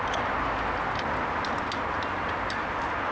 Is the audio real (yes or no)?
yes